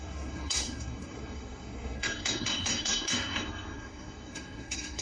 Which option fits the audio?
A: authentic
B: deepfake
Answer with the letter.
B